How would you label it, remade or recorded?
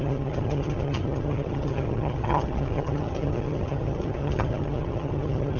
remade